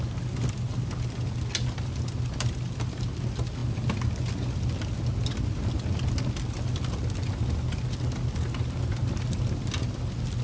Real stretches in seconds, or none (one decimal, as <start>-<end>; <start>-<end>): 0.0-10.4